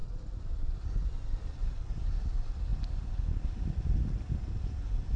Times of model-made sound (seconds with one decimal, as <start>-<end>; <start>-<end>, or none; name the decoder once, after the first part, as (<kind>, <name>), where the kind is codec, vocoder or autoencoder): 0.0-5.2 (vocoder, BigVGAN v2)